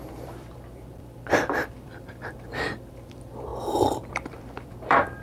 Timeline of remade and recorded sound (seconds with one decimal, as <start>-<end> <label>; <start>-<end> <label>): 0.0-3.5 remade; 3.5-4.1 recorded; 4.1-5.2 remade